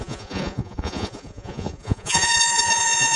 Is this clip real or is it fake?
fake